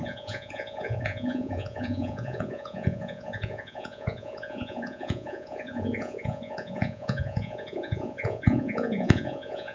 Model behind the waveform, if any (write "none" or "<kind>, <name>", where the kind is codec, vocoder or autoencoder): vocoder, Vocos